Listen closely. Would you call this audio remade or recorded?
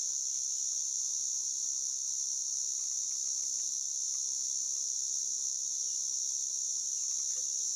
remade